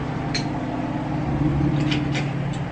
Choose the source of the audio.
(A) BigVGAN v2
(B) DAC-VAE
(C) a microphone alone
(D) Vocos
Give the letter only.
C